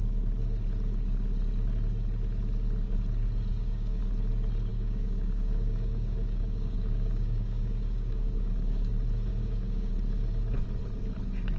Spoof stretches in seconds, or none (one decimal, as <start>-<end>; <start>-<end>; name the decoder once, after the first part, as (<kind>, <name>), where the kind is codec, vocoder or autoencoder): 3.5-4.0 (codec, DAC); 4.7-8.9; 9.3-9.9